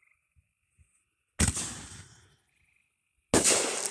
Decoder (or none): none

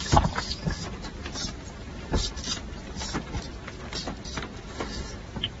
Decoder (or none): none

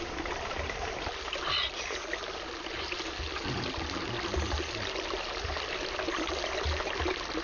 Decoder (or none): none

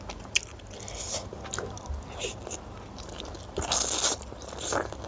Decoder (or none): none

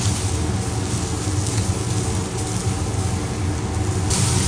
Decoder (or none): none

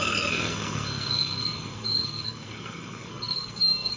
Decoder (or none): codec, SNAC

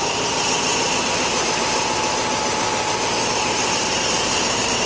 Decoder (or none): vocoder, BigVGAN v2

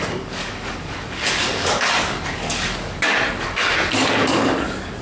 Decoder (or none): codec, DAC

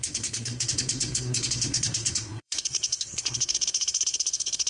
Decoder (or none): codec, SNAC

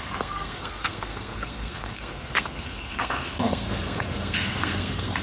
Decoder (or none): codec, SNAC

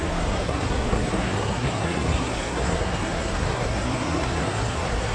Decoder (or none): codec, SNAC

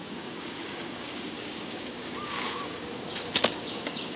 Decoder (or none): codec, DAC